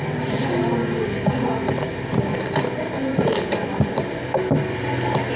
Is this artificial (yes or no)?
no